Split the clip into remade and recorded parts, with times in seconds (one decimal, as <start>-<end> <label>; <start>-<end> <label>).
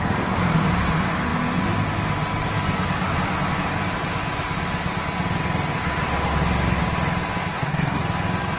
0.0-7.5 recorded; 7.5-8.0 remade; 8.0-8.6 recorded